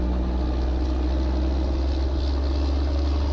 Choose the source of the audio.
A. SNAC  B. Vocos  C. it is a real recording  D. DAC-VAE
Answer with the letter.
C